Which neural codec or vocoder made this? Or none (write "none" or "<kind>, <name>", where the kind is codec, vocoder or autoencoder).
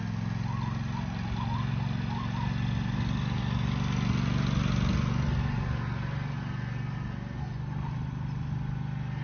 none